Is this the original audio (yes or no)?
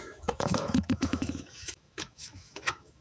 no